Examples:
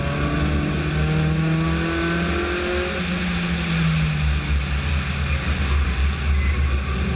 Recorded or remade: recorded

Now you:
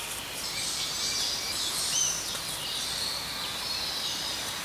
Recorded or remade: recorded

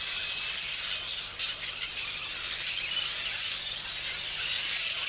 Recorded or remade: recorded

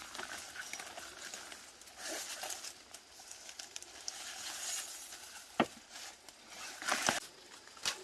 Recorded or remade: recorded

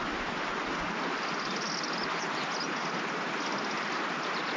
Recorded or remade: recorded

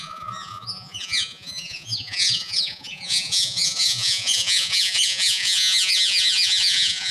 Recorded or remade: remade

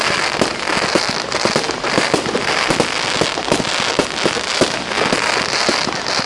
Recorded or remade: recorded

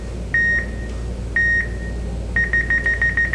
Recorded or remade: recorded